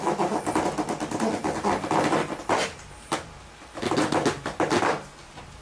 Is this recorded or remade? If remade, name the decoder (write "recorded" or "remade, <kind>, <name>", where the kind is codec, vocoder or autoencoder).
recorded